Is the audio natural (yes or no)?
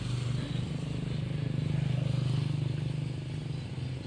yes